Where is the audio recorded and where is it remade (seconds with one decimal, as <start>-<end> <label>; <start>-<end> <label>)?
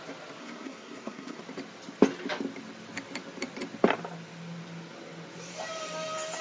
0.0-0.4 recorded; 0.4-1.4 remade; 1.4-6.4 recorded